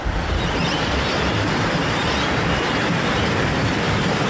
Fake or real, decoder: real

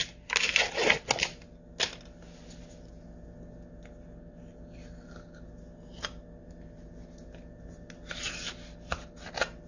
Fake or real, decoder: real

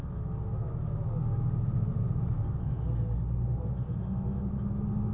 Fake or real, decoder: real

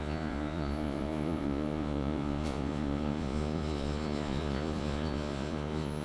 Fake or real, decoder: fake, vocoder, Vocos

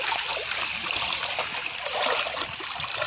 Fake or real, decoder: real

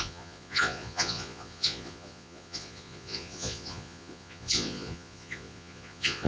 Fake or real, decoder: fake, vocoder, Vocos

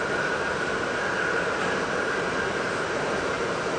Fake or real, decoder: real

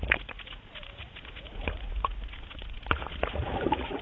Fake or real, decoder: fake, vocoder, Vocos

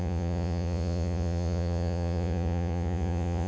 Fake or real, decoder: fake, vocoder, Vocos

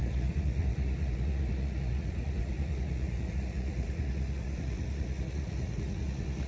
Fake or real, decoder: fake, vocoder, Vocos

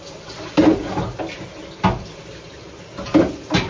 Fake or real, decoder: real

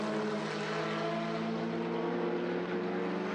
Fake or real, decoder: real